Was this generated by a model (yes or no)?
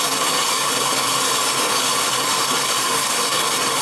yes